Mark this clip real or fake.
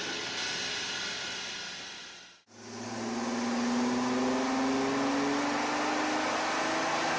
real